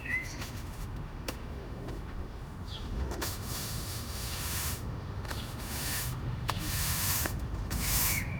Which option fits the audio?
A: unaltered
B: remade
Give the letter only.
B